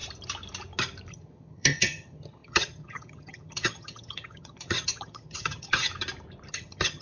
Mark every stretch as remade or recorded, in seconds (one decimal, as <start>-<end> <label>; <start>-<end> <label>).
0.0-1.1 recorded; 1.1-5.9 remade; 5.9-6.5 recorded; 6.5-7.0 remade